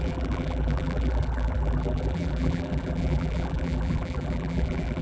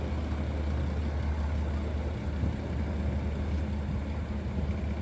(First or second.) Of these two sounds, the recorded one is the second